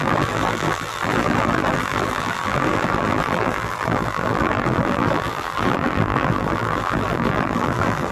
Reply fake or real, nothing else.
fake